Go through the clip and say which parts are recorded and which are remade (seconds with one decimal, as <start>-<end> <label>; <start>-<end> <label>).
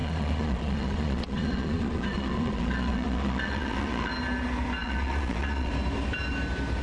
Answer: 0.0-4.1 remade; 4.1-4.8 recorded; 4.8-5.7 remade; 5.7-6.8 recorded